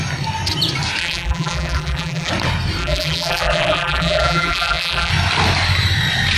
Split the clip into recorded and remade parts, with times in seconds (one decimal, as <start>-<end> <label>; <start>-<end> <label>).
0.0-1.0 recorded; 1.0-2.3 remade; 2.3-2.8 recorded; 2.8-5.1 remade; 5.1-6.4 recorded